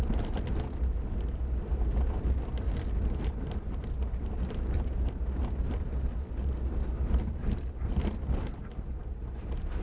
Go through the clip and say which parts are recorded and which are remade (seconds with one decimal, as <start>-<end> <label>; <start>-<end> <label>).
0.0-9.8 recorded